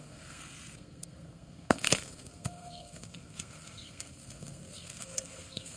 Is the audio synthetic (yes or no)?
yes